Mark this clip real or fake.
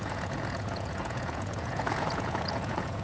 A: fake